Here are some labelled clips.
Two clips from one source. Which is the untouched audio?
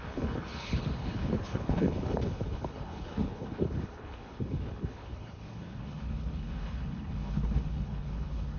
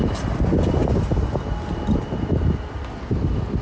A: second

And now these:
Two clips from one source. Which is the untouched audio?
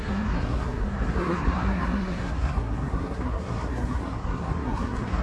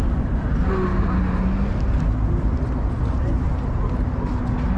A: second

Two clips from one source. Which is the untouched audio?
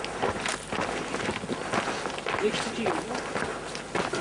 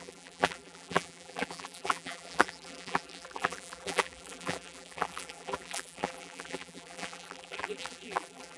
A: first